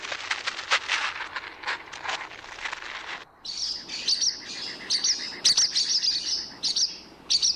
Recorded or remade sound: recorded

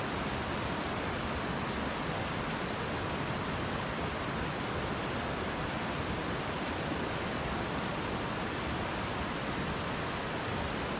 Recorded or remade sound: recorded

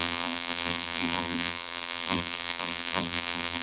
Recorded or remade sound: remade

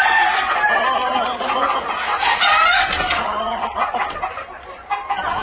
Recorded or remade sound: recorded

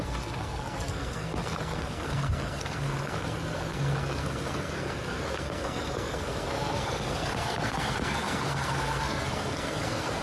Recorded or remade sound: remade